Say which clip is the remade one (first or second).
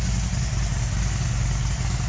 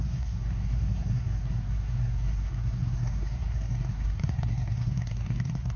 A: second